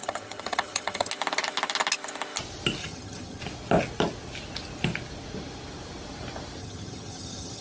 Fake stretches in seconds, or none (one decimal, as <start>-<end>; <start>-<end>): 0.0-1.1; 2.8-3.4; 6.6-7.6